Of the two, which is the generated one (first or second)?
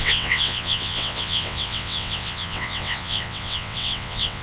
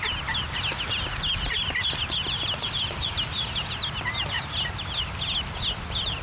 first